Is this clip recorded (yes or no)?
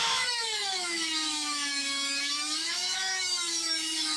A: no